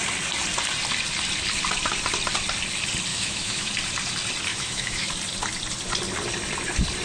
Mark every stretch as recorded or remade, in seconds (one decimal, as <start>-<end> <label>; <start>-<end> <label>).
0.0-3.1 recorded; 3.1-3.7 remade; 3.7-4.5 recorded; 4.5-5.1 remade; 5.1-7.0 recorded